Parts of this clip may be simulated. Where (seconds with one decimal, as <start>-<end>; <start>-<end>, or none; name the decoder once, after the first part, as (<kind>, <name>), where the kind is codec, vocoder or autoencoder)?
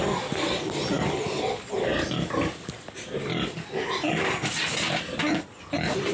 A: none